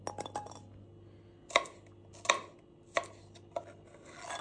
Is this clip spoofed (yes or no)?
no